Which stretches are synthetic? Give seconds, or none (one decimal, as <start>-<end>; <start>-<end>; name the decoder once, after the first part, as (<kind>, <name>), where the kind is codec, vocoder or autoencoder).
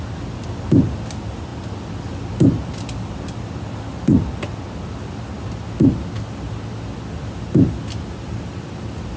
none